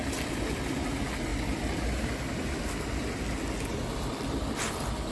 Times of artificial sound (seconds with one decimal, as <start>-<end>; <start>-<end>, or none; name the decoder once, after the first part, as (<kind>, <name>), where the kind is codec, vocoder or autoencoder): 0.0-0.5 (vocoder, BigVGAN v2)